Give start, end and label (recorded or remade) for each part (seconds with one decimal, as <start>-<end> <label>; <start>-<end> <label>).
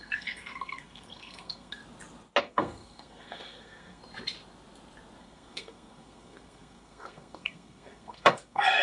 0.0-1.8 remade; 1.8-2.4 recorded; 2.4-4.0 remade; 4.0-5.2 recorded; 5.2-8.8 remade